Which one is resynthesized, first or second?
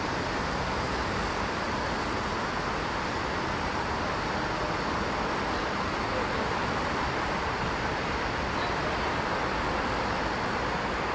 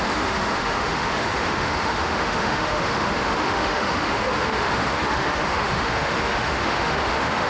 second